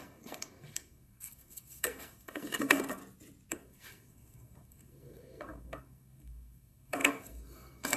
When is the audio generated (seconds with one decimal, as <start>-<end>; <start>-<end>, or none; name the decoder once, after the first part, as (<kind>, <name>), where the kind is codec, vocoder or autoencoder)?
0.0-3.0 (codec, SNAC); 3.5-8.0